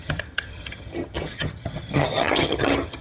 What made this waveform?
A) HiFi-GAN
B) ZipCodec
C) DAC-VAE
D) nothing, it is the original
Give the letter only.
A